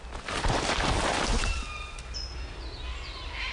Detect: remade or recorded recorded